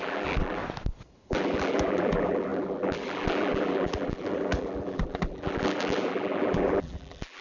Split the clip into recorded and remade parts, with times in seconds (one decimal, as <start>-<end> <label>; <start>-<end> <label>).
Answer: 0.0-0.6 remade; 0.6-1.3 recorded; 1.3-7.4 remade